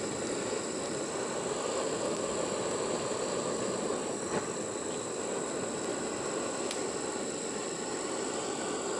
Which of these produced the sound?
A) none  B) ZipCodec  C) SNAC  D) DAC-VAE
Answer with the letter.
A